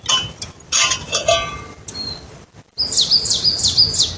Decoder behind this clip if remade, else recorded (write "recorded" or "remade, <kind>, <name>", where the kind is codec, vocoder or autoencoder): recorded